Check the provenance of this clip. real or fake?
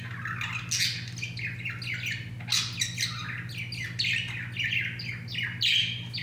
real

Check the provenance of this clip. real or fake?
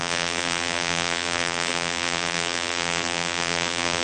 fake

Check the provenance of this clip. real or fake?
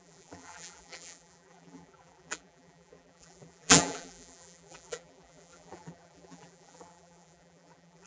fake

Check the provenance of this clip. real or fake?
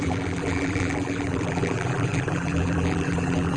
fake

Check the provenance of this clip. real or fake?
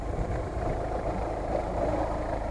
fake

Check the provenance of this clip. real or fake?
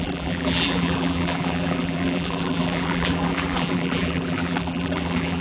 fake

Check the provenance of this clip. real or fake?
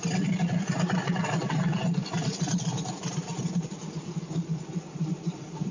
fake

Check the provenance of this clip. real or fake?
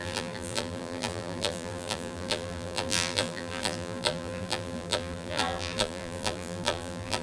fake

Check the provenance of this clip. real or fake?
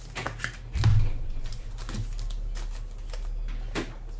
real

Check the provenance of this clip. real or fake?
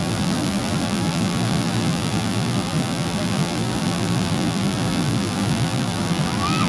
fake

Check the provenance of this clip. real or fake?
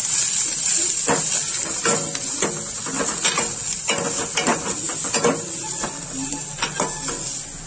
real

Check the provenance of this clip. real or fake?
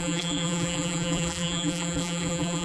fake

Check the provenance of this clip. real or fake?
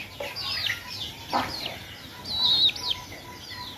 real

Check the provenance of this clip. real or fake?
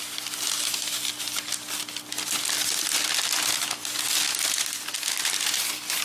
real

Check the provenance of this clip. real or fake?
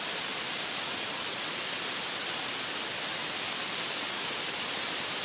real